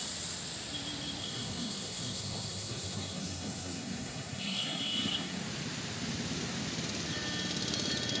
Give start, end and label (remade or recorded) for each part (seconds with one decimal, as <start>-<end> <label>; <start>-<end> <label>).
0.0-1.2 recorded; 1.2-5.4 remade; 5.4-8.2 recorded